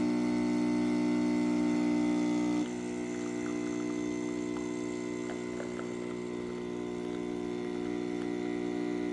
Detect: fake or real real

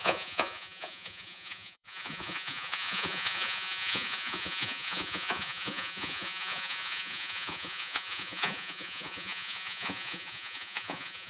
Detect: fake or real fake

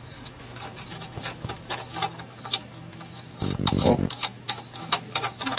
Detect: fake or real fake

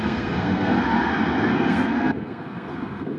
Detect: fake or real fake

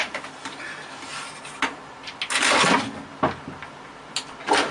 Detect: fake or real real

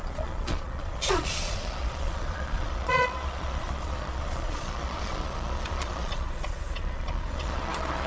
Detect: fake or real fake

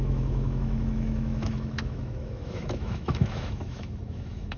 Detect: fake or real fake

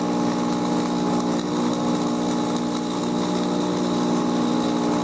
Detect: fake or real real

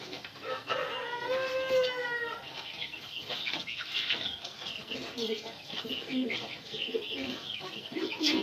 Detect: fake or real fake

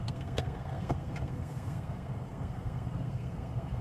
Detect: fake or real fake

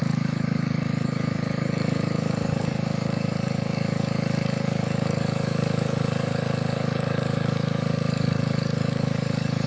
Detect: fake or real fake